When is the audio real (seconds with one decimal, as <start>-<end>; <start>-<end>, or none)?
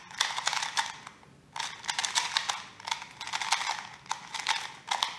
0.0-5.2